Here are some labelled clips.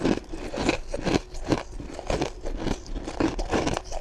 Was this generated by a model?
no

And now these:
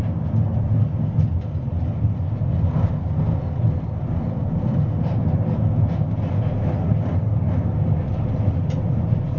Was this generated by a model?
no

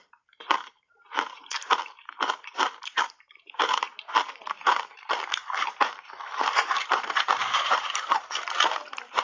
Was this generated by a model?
yes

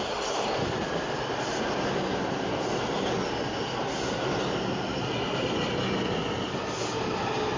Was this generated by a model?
no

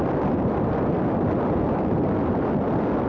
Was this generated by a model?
no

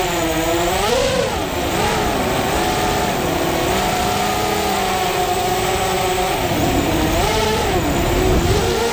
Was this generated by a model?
no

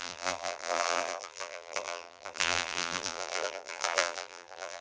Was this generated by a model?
yes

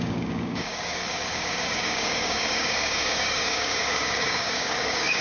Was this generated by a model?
yes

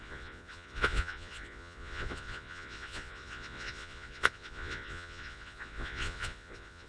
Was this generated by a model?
yes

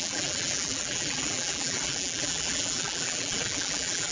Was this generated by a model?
yes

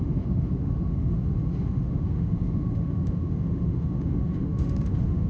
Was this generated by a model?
yes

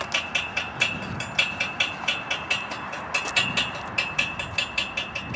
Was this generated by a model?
no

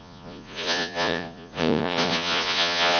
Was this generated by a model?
yes